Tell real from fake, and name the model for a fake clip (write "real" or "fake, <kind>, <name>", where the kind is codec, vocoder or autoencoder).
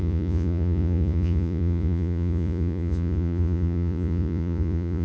fake, vocoder, Vocos